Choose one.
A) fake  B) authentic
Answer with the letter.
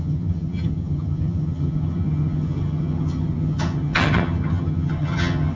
A